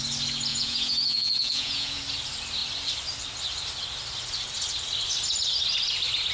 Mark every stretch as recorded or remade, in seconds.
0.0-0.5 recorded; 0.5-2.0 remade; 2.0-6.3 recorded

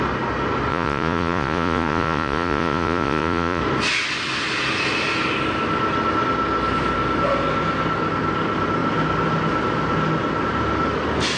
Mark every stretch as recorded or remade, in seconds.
0.0-0.7 recorded; 0.7-3.6 remade; 3.6-11.4 recorded

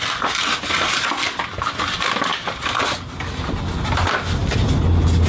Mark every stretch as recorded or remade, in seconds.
0.0-5.3 recorded

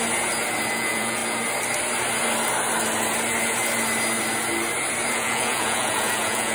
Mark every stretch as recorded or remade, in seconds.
0.0-0.7 recorded; 0.7-1.2 remade; 1.2-5.1 recorded; 5.1-6.5 remade